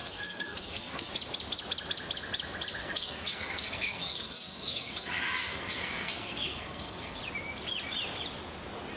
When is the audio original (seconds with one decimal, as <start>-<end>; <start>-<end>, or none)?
1.1-2.8; 7.2-9.0